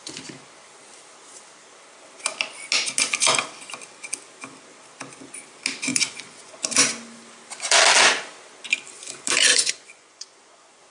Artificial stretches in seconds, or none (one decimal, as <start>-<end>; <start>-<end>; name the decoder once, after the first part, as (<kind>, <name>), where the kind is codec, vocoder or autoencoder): 5.9-6.5 (vocoder, Vocos); 9.5-10.9